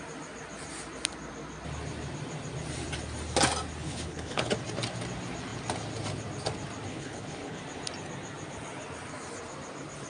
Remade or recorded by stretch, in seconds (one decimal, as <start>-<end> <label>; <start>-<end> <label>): 0.0-3.8 recorded; 3.8-4.5 remade; 4.5-6.9 recorded; 6.9-7.6 remade; 7.6-10.1 recorded